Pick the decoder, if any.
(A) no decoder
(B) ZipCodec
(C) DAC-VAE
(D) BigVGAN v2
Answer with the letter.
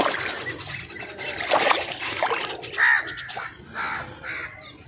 A